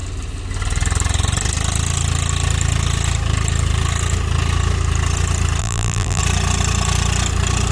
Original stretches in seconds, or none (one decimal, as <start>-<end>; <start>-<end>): 0.0-5.6; 6.2-7.7